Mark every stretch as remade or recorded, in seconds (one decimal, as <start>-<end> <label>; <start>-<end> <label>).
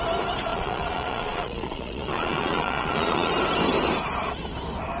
0.0-0.5 recorded; 0.5-3.3 remade; 3.3-5.0 recorded